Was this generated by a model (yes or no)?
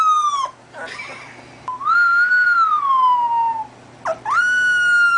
no